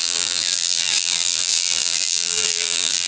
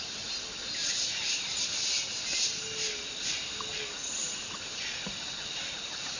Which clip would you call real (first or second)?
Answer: second